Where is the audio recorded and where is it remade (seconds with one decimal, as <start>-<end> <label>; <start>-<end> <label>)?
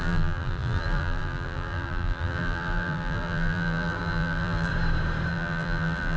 0.0-4.7 remade; 4.7-5.3 recorded; 5.3-6.2 remade